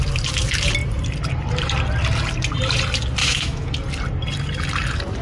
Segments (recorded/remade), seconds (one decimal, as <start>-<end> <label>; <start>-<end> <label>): 0.0-3.2 recorded; 3.2-3.7 remade; 3.7-5.2 recorded